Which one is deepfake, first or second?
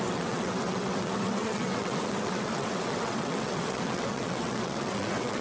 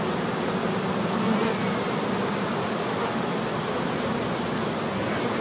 first